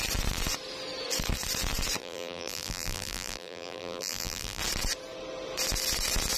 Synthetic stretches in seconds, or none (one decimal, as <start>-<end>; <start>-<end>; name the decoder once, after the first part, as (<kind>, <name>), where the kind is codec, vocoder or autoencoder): 2.0-4.6 (vocoder, BigVGAN v2)